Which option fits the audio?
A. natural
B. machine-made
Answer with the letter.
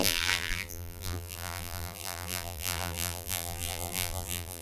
B